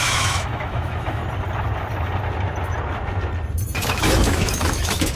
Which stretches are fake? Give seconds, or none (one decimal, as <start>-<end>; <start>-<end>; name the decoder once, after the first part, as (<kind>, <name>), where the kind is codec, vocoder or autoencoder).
0.0-1.2 (autoencoder, DAC-VAE); 3.8-5.2